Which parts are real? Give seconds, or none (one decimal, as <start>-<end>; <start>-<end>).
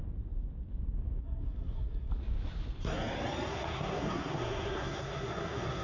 0.0-1.2; 2.1-3.5